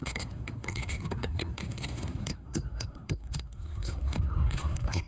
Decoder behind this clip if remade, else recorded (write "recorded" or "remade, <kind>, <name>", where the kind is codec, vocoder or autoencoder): remade, codec, SNAC